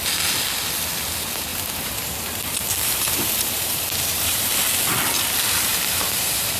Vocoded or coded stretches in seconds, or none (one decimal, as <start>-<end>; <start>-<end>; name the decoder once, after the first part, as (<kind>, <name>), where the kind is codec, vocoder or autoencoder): 1.5-4.6 (vocoder, BigVGAN v2); 5.7-6.6